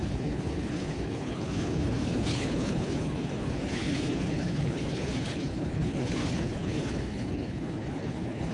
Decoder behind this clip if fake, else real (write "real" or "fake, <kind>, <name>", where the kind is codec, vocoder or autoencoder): fake, codec, HILCodec